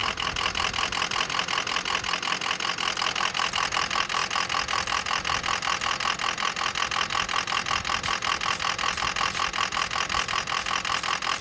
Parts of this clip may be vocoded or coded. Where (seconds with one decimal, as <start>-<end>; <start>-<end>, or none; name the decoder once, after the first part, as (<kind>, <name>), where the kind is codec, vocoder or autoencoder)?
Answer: none